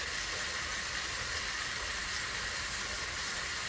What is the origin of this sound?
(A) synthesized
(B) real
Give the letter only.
B